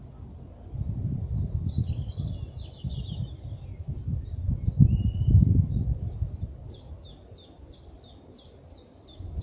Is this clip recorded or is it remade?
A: recorded